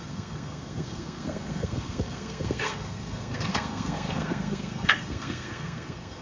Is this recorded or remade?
remade